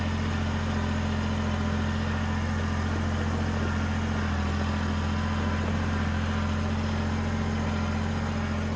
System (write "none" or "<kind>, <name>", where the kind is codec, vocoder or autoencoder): none